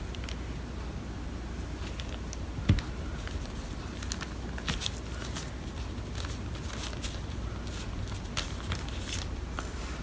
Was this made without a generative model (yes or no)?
yes